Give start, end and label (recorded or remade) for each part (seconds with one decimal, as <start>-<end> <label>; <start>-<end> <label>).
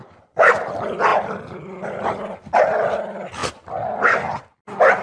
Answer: 0.0-5.0 recorded